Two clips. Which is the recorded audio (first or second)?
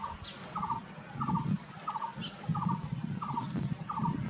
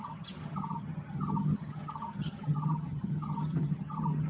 first